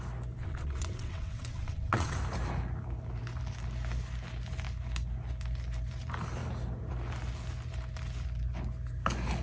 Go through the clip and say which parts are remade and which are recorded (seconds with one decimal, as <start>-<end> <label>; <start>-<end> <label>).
0.0-0.4 recorded; 0.4-2.2 remade; 2.2-9.4 recorded